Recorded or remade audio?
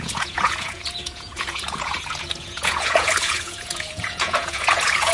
remade